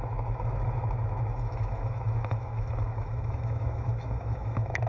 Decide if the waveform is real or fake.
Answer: fake